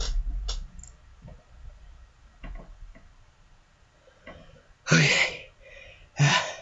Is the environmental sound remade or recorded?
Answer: recorded